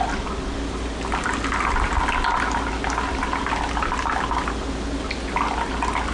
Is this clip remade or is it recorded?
recorded